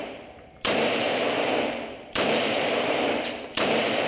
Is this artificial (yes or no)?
yes